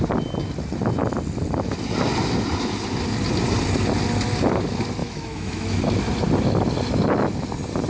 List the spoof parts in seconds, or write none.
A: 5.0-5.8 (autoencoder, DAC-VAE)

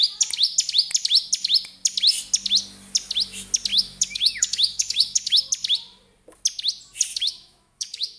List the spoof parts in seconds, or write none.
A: 3.7-5.4 (autoencoder, DAC-VAE); 7.1-8.2

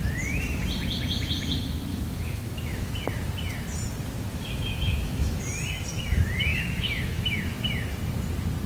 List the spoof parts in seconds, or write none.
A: 1.9-2.9 (autoencoder, DAC-VAE); 4.3-5.4; 6.5-7.4

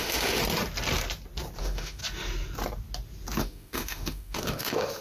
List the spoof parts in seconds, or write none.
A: 0.0-0.4 (autoencoder, DAC-VAE); 1.6-2.0; 3.4-5.0

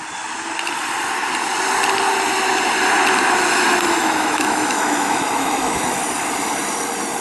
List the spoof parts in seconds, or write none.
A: 4.0-5.8 (autoencoder, DAC-VAE)

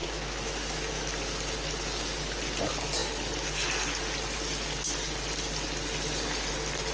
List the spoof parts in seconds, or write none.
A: 0.0-1.1 (autoencoder, DAC-VAE)

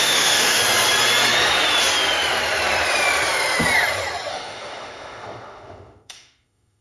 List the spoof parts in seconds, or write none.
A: 0.0-0.6 (autoencoder, DAC-VAE); 4.3-6.8